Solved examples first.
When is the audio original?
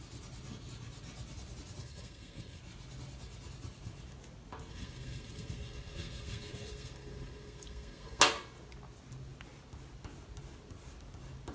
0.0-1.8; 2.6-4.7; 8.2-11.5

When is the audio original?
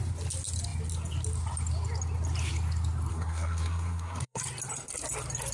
0.0-3.1; 4.4-5.5